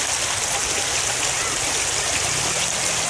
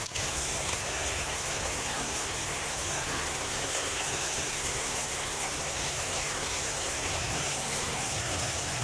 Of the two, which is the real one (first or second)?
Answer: first